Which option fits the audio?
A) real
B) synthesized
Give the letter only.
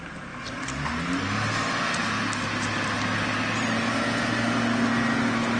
A